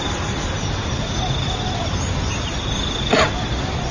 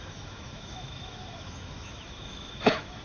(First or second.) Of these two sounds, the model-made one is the second